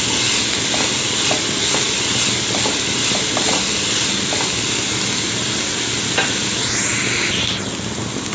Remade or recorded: recorded